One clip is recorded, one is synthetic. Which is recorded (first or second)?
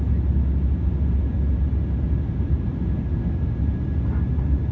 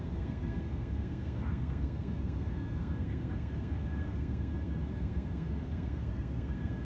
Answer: first